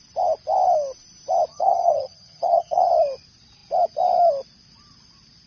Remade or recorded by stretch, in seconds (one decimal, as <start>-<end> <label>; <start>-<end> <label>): 0.0-1.5 recorded; 1.5-2.9 remade; 2.9-5.5 recorded